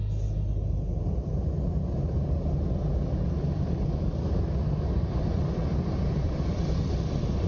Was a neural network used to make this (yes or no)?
no